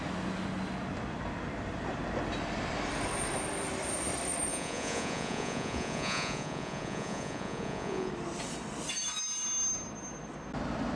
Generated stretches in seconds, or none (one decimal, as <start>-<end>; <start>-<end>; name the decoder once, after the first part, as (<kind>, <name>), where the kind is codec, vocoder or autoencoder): 4.5-8.1 (vocoder, Vocos)

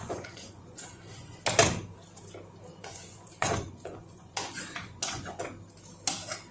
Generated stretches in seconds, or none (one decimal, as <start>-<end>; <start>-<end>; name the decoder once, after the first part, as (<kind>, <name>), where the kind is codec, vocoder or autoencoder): 0.0-1.4 (vocoder, Vocos); 2.7-5.4

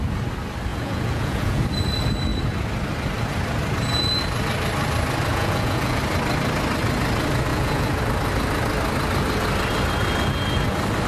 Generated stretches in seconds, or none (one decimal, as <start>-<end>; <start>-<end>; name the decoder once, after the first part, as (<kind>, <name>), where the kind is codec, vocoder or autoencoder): 0.7-1.6 (vocoder, Vocos); 5.3-6.0; 7.5-8.0

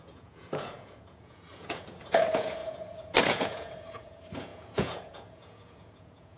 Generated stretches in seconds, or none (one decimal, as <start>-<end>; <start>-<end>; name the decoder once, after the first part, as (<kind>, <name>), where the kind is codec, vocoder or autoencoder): 0.0-6.4 (vocoder, Vocos)

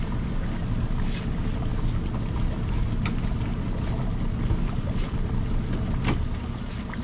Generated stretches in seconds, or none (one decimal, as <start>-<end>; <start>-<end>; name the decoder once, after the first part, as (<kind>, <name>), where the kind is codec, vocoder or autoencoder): none

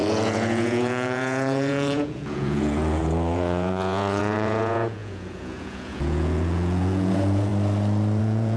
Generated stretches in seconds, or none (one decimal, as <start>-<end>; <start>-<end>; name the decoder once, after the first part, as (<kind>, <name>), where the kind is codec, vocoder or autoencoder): 0.0-7.5 (vocoder, Vocos); 8.2-8.6